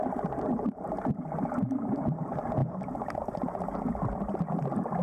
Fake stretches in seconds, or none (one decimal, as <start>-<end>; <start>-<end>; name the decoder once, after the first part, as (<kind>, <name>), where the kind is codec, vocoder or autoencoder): none